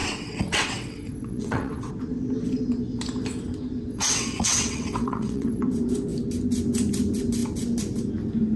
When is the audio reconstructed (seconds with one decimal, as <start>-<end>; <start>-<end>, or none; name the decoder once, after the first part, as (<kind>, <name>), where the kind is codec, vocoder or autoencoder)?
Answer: 0.0-1.9 (vocoder, WaveNeXt); 3.9-5.6